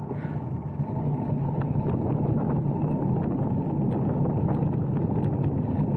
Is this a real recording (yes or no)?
yes